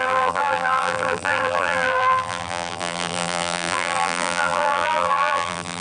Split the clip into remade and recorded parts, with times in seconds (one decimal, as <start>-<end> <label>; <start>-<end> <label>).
0.0-5.8 remade